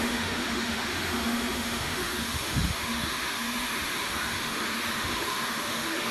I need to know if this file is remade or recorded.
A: remade